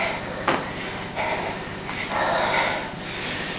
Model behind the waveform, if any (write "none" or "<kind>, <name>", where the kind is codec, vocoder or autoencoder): none